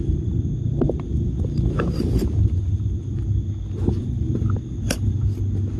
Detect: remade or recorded recorded